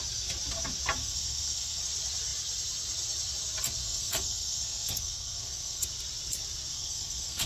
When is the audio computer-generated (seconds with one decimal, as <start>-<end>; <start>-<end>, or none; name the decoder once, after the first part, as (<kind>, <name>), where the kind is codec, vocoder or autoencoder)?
1.0-1.8 (codec, SNAC); 3.8-5.8; 6.7-7.5